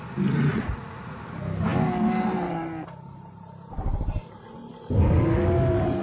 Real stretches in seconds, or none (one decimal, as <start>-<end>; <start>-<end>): 0.0-0.5; 1.2-6.0